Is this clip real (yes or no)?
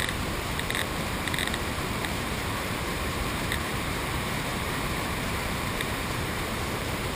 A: no